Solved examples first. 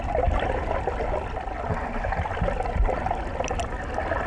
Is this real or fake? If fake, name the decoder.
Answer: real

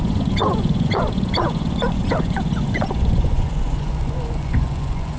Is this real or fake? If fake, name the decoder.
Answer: fake, vocoder, Vocos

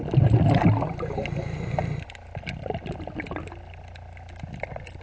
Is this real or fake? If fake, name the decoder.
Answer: real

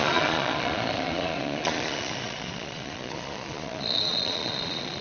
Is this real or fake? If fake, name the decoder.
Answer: fake, vocoder, Vocos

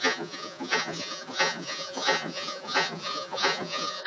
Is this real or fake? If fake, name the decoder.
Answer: fake, vocoder, Vocos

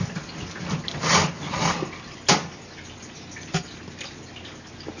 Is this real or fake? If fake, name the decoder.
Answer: real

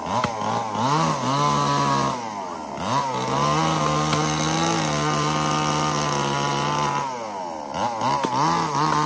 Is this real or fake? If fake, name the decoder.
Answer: real